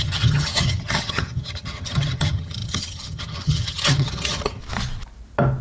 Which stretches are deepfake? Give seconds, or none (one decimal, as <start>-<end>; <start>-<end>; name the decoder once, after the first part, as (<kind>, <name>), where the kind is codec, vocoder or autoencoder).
0.0-4.6 (vocoder, HiFi-GAN)